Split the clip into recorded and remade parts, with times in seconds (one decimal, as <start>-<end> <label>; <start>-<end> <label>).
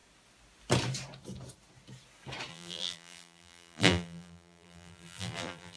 0.0-2.5 recorded; 2.5-5.8 remade